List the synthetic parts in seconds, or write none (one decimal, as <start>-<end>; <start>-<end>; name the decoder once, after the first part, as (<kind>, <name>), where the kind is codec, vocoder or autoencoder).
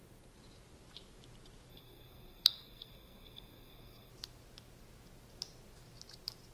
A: 1.7-4.1 (codec, SNAC)